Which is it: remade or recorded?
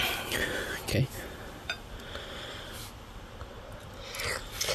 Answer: recorded